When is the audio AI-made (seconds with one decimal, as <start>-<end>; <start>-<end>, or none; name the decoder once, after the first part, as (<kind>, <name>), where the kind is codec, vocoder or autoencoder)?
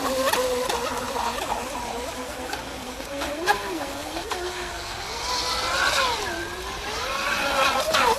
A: 2.2-5.2 (codec, SNAC)